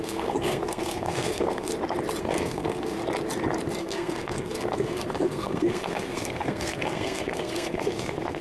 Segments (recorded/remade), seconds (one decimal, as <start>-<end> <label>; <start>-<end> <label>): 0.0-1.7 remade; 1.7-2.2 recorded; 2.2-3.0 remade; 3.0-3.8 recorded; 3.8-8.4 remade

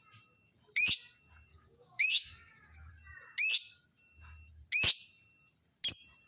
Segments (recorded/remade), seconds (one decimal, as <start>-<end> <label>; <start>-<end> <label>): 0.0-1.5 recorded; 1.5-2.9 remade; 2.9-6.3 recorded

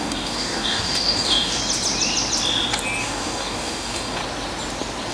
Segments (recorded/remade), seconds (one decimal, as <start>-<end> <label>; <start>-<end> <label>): 0.0-1.6 remade; 1.6-3.0 recorded; 3.0-4.2 remade; 4.2-5.1 recorded